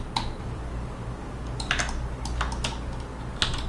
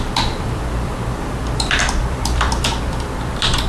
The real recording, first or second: first